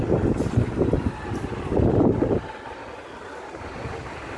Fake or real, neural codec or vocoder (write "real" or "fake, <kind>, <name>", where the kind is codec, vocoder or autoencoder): real